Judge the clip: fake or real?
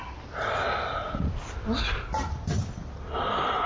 real